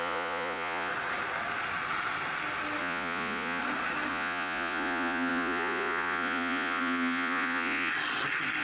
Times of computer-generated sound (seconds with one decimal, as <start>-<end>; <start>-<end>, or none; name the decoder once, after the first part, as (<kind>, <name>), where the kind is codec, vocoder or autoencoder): 0.0-0.9 (vocoder, Vocos); 2.8-3.6; 4.1-7.9

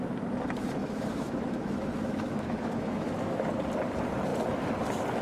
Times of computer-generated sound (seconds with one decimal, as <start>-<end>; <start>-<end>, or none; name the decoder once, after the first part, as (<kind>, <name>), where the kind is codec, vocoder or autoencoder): 0.8-3.1 (autoencoder, DAC-VAE)

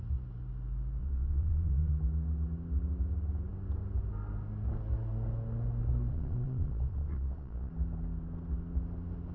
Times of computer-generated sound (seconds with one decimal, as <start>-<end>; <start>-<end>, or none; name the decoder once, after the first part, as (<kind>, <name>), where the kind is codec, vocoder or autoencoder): 1.0-1.9 (vocoder, Vocos); 6.1-7.7